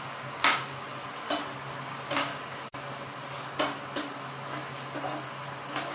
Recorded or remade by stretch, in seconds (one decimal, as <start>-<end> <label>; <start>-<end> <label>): 0.0-0.9 remade; 0.9-1.8 recorded; 1.8-2.3 remade; 2.3-5.9 recorded